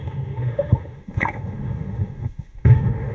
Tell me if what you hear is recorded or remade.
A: remade